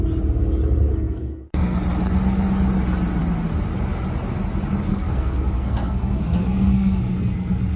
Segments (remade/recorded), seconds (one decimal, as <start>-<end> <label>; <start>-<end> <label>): 0.0-0.9 recorded; 0.9-1.8 remade; 1.8-4.9 recorded; 4.9-7.8 remade